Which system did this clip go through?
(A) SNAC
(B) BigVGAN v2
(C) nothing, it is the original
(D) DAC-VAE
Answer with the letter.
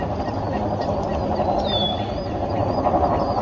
C